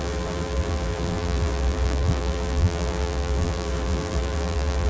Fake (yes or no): yes